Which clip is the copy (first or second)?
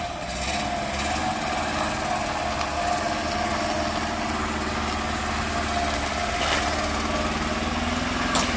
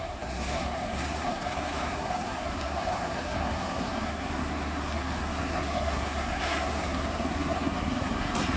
second